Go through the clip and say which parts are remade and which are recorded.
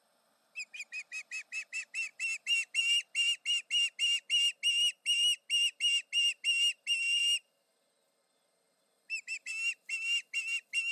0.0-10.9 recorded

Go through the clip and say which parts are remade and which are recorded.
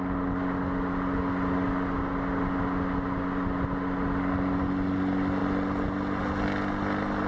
0.0-7.3 recorded